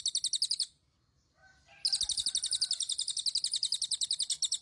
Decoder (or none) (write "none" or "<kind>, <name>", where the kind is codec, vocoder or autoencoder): none